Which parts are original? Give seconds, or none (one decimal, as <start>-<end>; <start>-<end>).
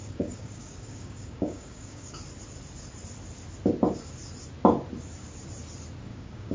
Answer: 2.2-6.1